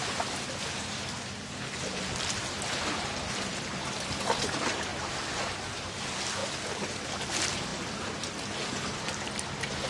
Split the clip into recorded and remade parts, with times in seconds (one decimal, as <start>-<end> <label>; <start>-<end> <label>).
0.0-3.5 recorded; 3.5-4.9 remade; 4.9-5.6 recorded; 5.6-6.4 remade; 6.4-7.3 recorded; 7.3-9.9 remade